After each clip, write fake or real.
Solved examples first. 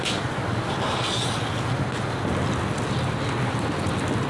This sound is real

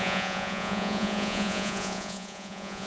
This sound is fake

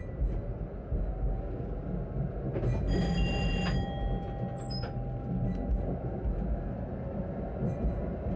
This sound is real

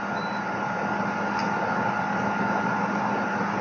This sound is real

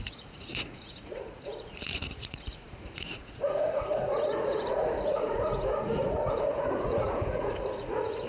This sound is fake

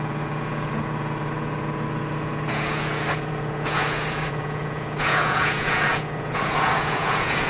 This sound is fake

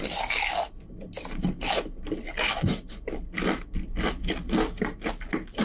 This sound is real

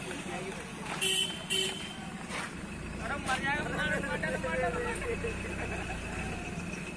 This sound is real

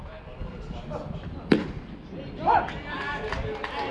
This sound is real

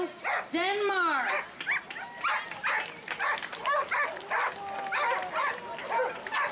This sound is real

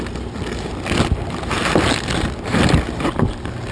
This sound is real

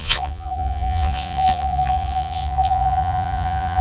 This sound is fake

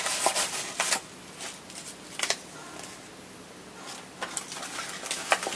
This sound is real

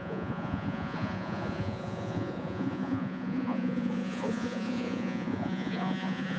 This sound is fake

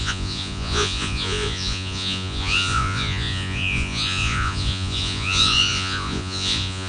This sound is fake